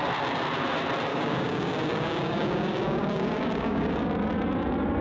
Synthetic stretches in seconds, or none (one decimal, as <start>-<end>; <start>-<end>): 1.1-4.1